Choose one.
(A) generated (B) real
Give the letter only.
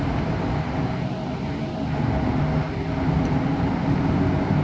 B